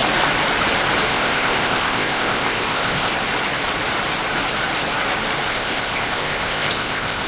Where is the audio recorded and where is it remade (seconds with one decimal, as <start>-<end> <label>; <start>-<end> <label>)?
0.0-1.1 recorded; 1.1-3.1 remade; 3.1-5.5 recorded; 5.5-7.3 remade